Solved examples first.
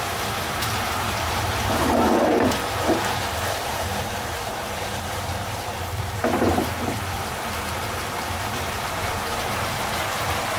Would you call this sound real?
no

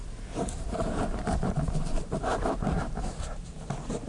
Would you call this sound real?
no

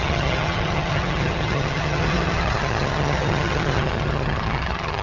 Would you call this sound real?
no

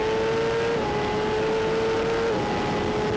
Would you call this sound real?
yes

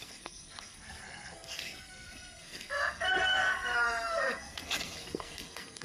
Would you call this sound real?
no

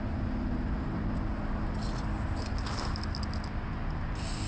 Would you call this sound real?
yes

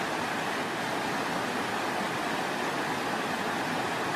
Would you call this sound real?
yes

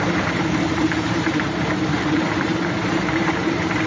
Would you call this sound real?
no